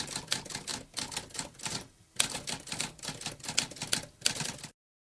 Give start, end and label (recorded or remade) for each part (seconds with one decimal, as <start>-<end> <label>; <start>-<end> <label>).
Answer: 0.0-5.0 recorded